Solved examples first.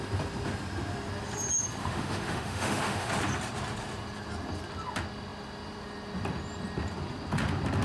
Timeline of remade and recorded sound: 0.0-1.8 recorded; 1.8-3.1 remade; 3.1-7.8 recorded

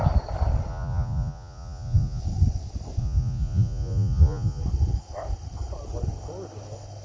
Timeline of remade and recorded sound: 0.0-0.7 recorded; 0.7-2.2 remade; 2.2-3.0 recorded; 3.0-4.6 remade; 4.6-7.0 recorded

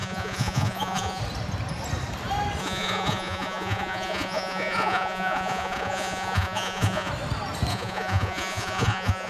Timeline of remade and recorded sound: 0.0-1.2 remade; 1.2-2.6 recorded; 2.6-7.1 remade; 7.1-7.7 recorded; 7.7-9.3 remade